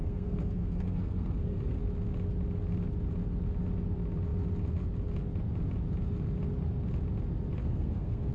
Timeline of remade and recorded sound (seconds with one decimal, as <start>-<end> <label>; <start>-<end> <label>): 0.0-1.8 remade; 1.8-7.6 recorded; 7.6-8.3 remade